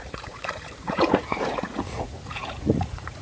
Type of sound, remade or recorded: remade